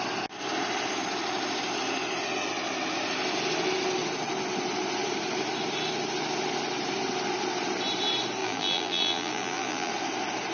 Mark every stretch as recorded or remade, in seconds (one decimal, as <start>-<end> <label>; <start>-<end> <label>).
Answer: 0.0-8.4 recorded; 8.4-9.9 remade; 9.9-10.5 recorded